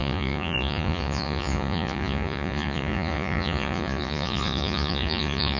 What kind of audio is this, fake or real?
fake